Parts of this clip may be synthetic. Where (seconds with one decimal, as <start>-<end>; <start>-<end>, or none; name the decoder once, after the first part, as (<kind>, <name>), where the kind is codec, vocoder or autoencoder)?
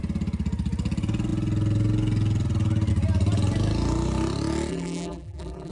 4.7-5.7 (vocoder, BigVGAN v2)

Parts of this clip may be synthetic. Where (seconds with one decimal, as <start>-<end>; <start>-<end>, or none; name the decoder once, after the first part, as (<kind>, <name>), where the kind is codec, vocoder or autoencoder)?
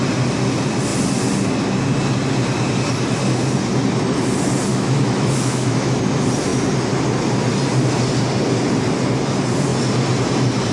4.7-6.0 (autoencoder, DAC-VAE)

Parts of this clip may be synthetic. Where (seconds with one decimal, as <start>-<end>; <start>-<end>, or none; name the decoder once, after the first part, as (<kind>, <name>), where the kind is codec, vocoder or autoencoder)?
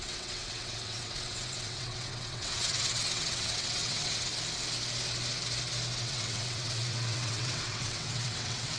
0.0-4.3 (vocoder, WaveNeXt); 6.0-8.8